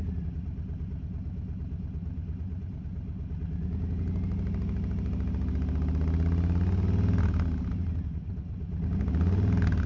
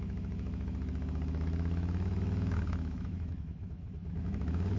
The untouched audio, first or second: first